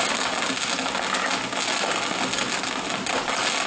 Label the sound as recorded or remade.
recorded